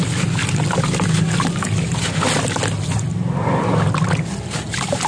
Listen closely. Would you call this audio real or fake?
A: real